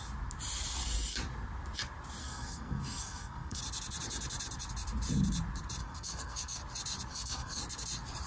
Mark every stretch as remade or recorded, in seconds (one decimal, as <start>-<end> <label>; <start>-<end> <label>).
0.0-2.2 recorded; 2.2-3.6 remade; 3.6-5.8 recorded; 5.8-6.6 remade; 6.6-7.1 recorded; 7.1-7.6 remade; 7.6-8.3 recorded